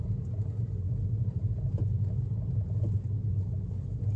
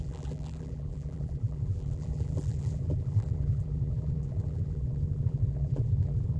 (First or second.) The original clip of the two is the first